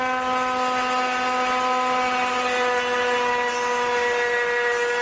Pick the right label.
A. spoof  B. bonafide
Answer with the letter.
B